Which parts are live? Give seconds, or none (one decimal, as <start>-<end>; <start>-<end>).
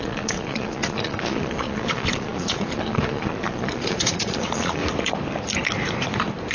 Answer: 4.8-6.5